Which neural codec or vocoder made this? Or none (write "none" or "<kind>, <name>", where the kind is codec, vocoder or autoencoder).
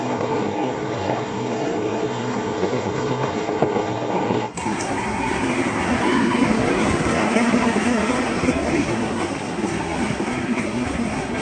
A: codec, SNAC